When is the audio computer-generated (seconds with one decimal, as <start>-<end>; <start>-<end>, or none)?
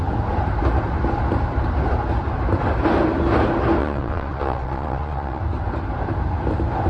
3.8-5.4